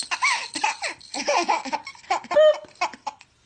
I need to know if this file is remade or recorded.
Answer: recorded